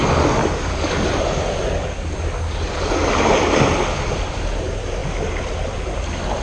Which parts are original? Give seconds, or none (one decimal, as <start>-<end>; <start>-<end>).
0.0-0.4; 3.1-6.4